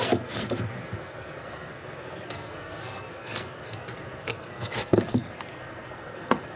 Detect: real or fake fake